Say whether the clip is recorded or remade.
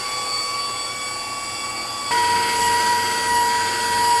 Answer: recorded